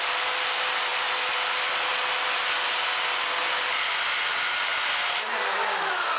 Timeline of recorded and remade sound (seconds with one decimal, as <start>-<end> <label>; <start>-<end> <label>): 0.0-6.2 recorded